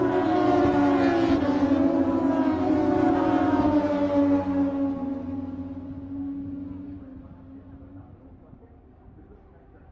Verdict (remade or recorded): recorded